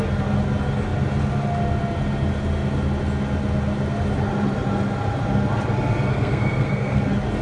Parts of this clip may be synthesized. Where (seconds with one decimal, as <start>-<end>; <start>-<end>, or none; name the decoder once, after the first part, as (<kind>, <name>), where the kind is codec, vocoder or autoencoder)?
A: 6.1-7.0 (codec, SNAC)